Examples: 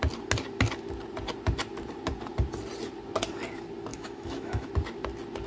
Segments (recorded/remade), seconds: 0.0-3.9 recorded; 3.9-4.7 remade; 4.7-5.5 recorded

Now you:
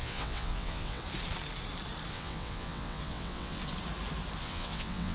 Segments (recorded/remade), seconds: 0.0-1.0 remade; 1.0-2.1 recorded; 2.1-3.6 remade; 3.6-4.4 recorded; 4.4-5.1 remade

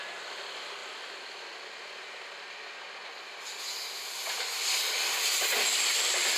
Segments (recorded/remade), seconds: 0.0-6.4 recorded

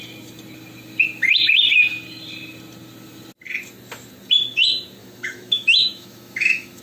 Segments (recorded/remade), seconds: 0.0-5.0 recorded; 5.0-6.8 remade

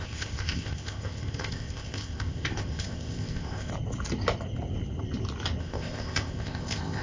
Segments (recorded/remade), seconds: 0.0-3.7 remade; 3.7-5.6 recorded; 5.6-7.0 remade

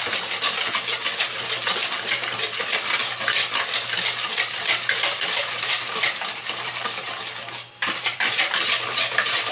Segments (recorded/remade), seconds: 0.0-5.4 recorded; 5.4-7.2 remade; 7.2-8.0 recorded; 8.0-9.5 remade